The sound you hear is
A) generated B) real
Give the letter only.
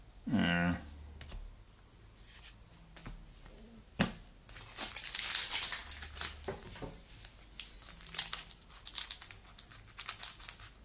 B